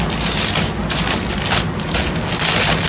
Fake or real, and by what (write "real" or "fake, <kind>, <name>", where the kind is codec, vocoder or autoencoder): real